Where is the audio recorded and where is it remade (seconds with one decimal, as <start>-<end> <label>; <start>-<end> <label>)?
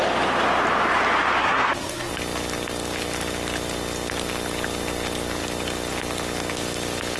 0.0-1.4 recorded; 1.4-2.1 remade; 2.1-7.2 recorded